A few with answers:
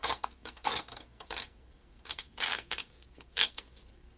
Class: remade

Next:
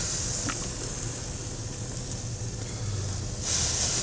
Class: recorded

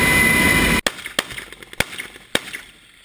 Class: recorded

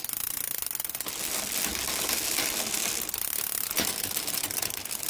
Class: recorded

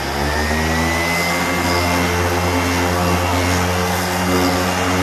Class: recorded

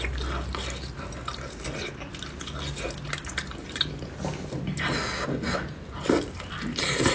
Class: recorded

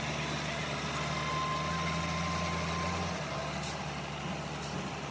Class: recorded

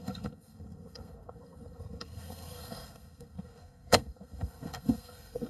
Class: remade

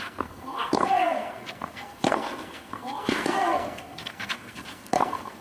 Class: remade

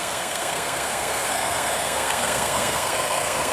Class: remade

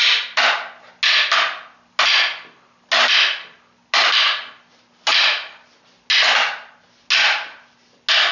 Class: recorded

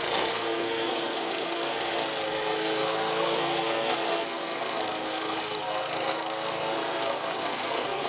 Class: remade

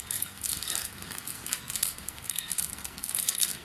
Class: remade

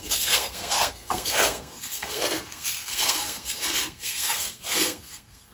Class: remade